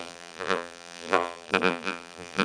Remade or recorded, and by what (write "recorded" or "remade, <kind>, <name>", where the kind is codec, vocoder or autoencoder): remade, vocoder, BigVGAN v2